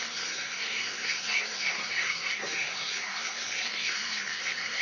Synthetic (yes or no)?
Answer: yes